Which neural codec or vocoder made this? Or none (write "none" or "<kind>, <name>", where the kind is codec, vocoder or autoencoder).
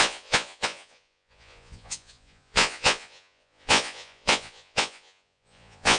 vocoder, Vocos